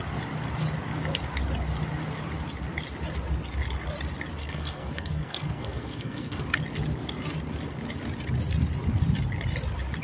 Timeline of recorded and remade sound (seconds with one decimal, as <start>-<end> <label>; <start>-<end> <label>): 0.0-4.4 recorded; 4.4-6.4 remade; 6.4-10.0 recorded